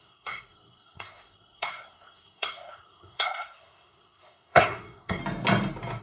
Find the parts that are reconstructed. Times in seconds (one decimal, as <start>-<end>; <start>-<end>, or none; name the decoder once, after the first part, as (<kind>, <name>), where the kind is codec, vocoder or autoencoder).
0.0-5.2 (codec, SNAC)